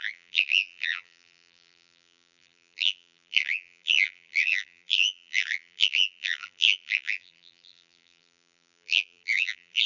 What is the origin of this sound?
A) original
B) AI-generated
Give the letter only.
B